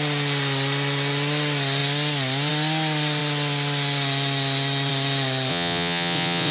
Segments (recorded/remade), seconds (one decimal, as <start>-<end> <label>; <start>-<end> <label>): 0.0-5.5 recorded; 5.5-6.5 remade